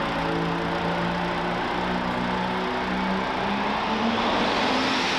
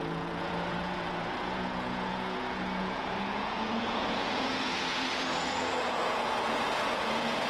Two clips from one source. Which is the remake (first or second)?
second